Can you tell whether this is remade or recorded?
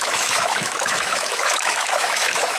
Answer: remade